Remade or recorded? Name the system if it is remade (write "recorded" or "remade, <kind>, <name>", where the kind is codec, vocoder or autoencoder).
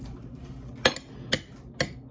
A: recorded